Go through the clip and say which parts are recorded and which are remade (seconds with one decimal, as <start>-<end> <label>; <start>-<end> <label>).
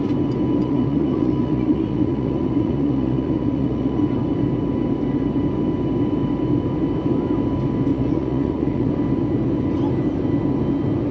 0.0-0.6 recorded; 0.6-4.0 remade; 4.0-7.9 recorded; 7.9-8.9 remade; 8.9-11.1 recorded